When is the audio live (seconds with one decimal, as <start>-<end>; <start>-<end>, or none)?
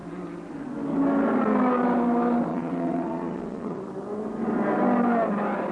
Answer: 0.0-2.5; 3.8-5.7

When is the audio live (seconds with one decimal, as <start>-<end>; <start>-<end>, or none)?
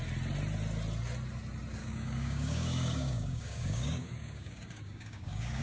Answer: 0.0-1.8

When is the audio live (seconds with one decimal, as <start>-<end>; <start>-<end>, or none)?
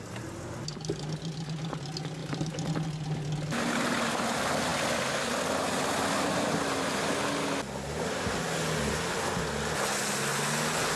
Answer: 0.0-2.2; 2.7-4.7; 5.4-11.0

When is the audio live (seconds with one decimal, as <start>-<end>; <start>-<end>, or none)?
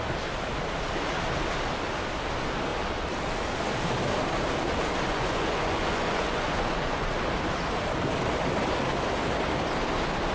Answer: 0.0-5.1; 7.1-10.3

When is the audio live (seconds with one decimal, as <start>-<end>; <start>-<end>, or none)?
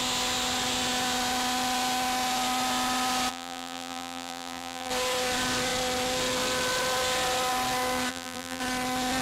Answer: 0.0-3.3; 4.9-8.1; 8.6-9.2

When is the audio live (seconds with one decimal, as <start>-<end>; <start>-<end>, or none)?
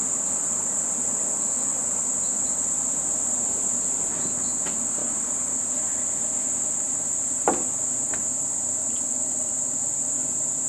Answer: 0.0-1.7; 2.7-5.0; 5.5-10.7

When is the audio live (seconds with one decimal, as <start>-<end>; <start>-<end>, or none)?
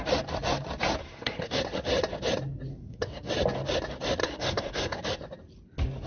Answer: 0.0-1.0; 1.6-2.7; 3.3-4.2; 5.0-6.1